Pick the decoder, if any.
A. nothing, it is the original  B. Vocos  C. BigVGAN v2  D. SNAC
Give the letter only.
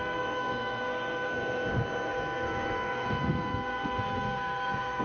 D